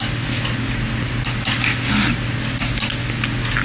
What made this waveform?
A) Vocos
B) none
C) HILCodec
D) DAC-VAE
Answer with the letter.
B